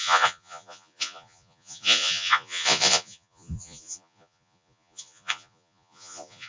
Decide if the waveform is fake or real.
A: fake